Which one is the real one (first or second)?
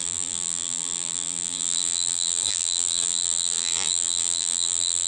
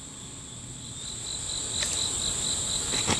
second